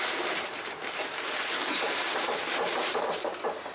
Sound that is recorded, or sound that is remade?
remade